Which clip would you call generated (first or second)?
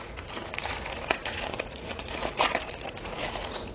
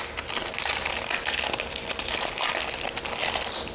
first